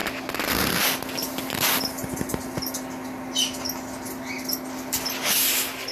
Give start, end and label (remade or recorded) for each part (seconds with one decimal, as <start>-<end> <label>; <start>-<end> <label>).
0.0-5.9 recorded